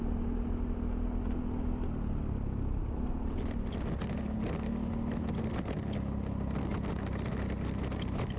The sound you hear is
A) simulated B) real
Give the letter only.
B